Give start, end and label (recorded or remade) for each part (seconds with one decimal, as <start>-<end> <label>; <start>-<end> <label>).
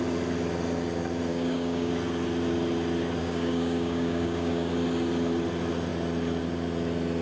0.0-1.3 recorded; 1.3-1.9 remade; 1.9-3.2 recorded; 3.2-4.7 remade; 4.7-7.2 recorded